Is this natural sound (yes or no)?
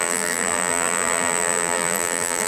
no